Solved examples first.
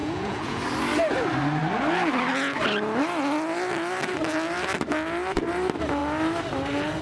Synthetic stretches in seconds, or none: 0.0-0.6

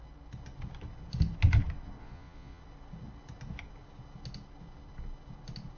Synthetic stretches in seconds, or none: 2.0-2.6

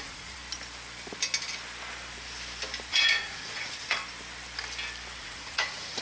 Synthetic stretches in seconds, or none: 0.0-0.4; 2.9-4.0; 5.2-6.0

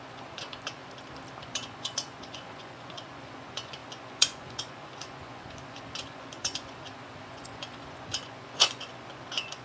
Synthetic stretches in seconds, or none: 0.0-0.8; 1.4-9.6

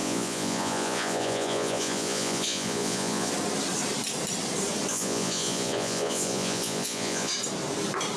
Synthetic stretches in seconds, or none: 0.0-3.3; 4.9-7.3